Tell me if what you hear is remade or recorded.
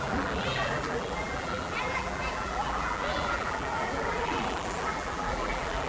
remade